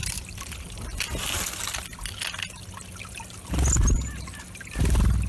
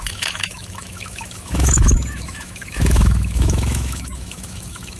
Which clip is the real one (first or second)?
first